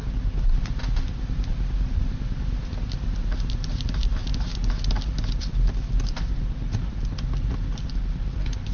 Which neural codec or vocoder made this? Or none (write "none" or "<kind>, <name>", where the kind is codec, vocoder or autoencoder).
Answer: none